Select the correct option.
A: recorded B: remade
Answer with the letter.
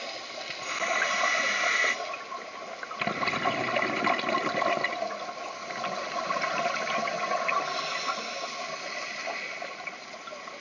A